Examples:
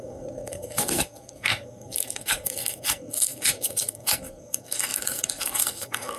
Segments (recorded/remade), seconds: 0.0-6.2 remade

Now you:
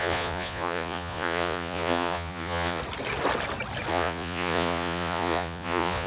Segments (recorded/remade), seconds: 0.0-2.8 remade; 2.8-3.9 recorded; 3.9-6.1 remade

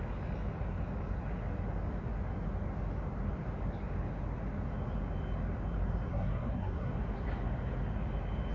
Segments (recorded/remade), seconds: 0.0-6.1 recorded; 6.1-6.9 remade; 6.9-8.5 recorded

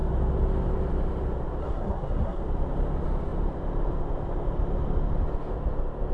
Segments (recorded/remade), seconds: 0.0-1.6 recorded; 1.6-2.4 remade; 2.4-6.1 recorded

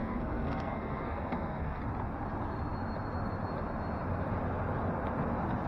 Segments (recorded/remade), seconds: 0.0-1.8 remade; 1.8-5.7 recorded

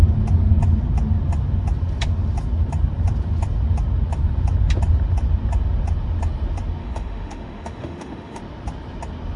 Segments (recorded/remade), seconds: 0.0-6.8 recorded; 6.8-8.4 remade; 8.4-9.4 recorded

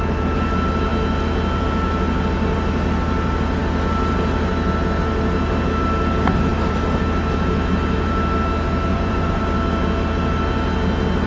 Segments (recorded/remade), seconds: 0.0-8.9 recorded; 8.9-9.4 remade; 9.4-11.3 recorded

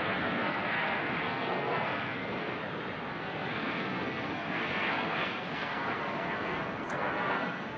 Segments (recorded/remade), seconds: 0.0-2.6 remade; 2.6-3.1 recorded; 3.1-7.8 remade